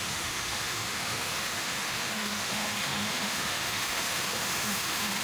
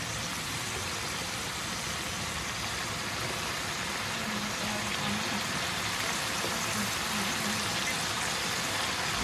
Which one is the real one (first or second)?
second